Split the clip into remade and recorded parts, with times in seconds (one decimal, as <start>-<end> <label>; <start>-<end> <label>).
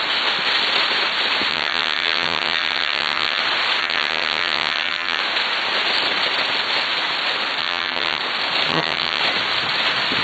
0.0-1.5 recorded; 1.5-3.4 remade; 3.4-3.8 recorded; 3.8-5.2 remade; 5.2-7.6 recorded; 7.6-8.2 remade; 8.2-8.7 recorded; 8.7-9.2 remade; 9.2-10.2 recorded